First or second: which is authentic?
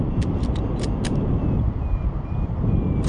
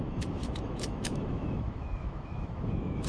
first